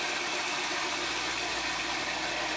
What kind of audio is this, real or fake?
real